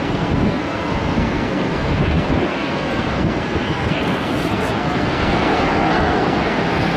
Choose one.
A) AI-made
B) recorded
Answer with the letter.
A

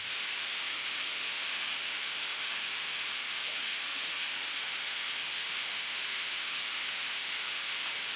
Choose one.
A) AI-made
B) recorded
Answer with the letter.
A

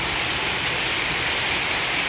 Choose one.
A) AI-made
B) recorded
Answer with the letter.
B